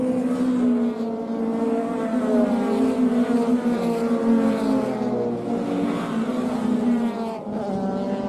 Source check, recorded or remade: recorded